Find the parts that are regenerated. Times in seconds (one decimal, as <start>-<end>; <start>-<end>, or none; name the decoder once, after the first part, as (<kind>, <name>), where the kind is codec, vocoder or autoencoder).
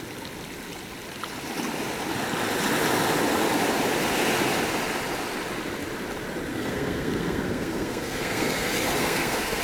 6.5-9.6 (codec, SNAC)